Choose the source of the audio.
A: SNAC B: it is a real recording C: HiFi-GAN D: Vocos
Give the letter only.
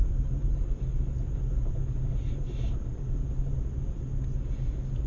B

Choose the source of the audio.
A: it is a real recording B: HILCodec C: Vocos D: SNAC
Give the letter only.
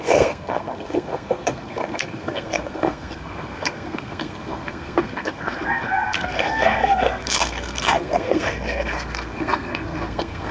D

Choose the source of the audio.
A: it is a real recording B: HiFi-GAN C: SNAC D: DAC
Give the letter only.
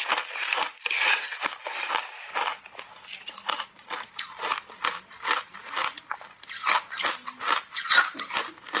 A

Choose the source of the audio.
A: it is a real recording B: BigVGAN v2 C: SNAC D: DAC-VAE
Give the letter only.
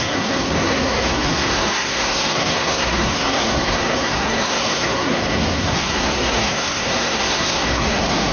C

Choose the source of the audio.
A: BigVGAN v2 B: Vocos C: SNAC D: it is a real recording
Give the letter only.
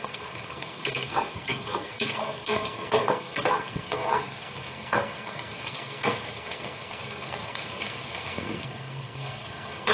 C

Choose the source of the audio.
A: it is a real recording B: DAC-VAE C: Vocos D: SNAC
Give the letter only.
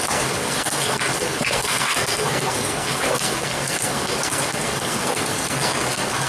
D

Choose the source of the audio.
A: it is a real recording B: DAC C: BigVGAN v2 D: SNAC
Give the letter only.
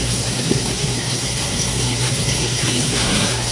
D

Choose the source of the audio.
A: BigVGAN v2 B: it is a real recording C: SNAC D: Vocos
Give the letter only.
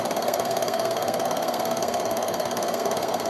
C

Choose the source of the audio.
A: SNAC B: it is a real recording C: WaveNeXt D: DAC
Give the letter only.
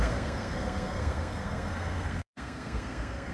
A